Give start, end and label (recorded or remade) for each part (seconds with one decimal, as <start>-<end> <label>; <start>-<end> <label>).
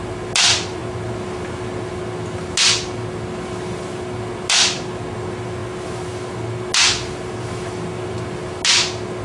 0.0-9.2 recorded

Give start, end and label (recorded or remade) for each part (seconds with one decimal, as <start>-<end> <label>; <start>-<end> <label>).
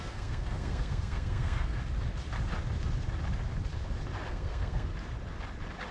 0.0-1.8 remade; 1.8-4.3 recorded; 4.3-4.9 remade; 4.9-5.9 recorded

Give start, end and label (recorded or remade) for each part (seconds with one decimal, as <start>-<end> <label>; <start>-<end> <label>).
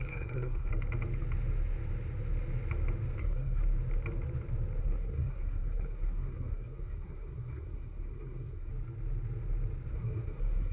0.0-0.7 remade; 0.7-3.2 recorded; 3.2-3.6 remade; 3.6-4.8 recorded; 4.8-8.7 remade; 8.7-9.9 recorded; 9.9-10.7 remade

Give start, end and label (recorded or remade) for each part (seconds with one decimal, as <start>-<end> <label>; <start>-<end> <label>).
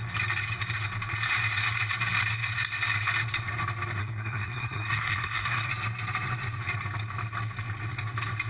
0.0-4.0 recorded; 4.0-5.7 remade; 5.7-8.5 recorded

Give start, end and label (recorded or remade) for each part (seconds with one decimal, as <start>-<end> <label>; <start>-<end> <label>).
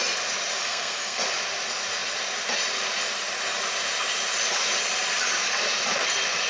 0.0-0.6 recorded; 0.6-1.2 remade; 1.2-6.5 recorded